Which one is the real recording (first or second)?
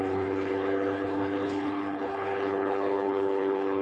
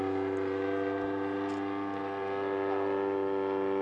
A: second